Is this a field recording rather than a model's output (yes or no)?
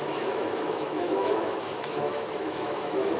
no